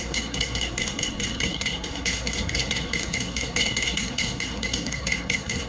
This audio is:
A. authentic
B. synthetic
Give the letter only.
B